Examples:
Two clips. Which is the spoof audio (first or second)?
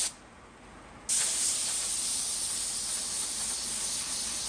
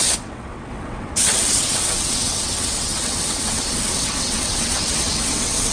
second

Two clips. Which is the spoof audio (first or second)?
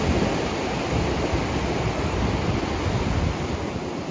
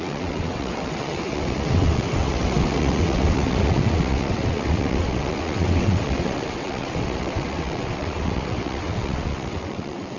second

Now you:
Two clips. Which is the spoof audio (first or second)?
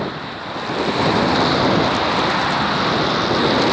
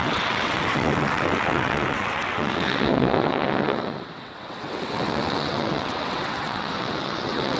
second